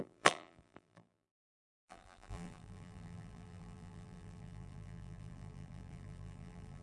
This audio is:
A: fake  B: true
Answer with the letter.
A